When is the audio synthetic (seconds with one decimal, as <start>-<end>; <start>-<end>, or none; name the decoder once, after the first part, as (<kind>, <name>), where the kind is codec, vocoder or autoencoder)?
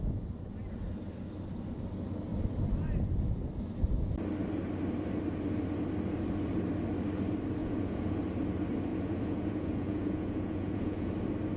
7.6-8.2 (vocoder, Vocos); 8.9-11.1